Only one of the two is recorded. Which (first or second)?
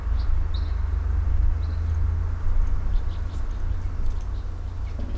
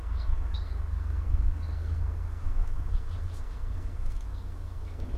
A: first